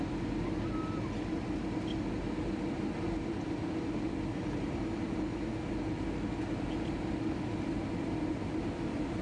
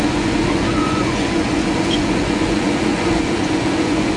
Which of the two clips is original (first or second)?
first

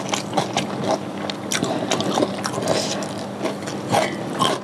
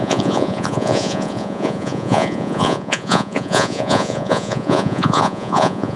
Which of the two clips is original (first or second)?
first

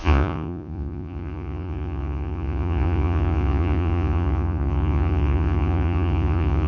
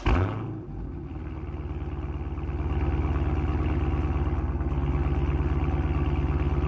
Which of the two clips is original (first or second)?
second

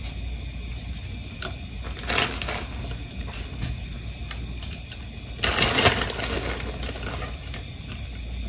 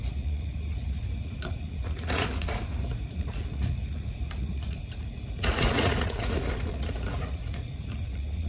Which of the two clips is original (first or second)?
first